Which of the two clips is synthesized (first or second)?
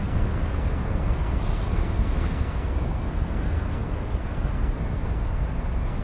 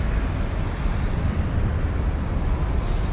first